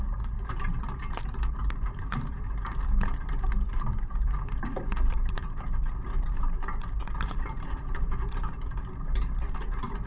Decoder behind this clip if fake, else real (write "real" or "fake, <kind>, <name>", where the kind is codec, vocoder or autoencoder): fake, vocoder, BigVGAN v2